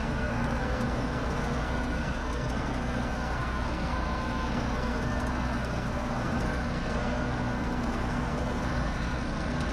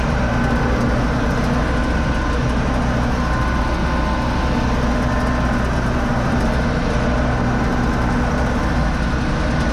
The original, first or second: second